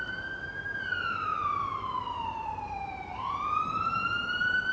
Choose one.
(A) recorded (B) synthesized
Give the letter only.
B